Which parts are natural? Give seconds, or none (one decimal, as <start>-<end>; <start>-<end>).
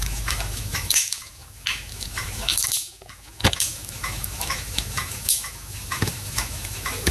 none